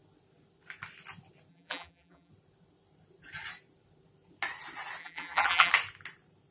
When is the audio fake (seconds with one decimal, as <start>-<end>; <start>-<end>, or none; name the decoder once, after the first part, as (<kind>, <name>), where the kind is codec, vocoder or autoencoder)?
1.5-2.3 (vocoder, BigVGAN v2); 5.0-5.7